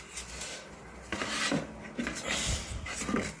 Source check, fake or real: real